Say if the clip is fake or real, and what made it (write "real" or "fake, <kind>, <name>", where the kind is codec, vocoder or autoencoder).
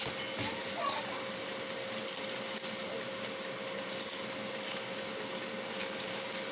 real